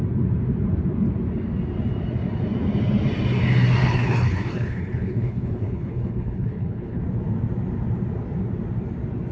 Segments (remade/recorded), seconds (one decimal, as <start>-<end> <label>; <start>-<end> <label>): 0.0-3.8 recorded; 3.8-7.0 remade; 7.0-9.3 recorded